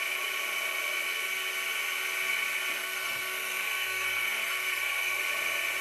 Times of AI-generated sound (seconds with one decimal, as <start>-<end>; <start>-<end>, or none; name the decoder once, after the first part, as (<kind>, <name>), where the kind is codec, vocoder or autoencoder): 2.8-5.2 (codec, SNAC)